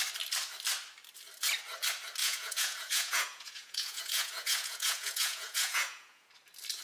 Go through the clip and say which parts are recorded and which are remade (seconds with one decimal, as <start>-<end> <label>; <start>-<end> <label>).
0.0-2.2 recorded; 2.2-6.3 remade; 6.3-6.8 recorded